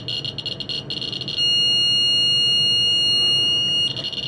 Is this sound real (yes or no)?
yes